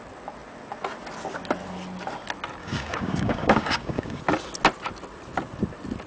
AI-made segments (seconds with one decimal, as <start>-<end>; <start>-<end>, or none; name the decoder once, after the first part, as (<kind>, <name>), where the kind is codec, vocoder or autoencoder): 2.6-4.2 (codec, DAC)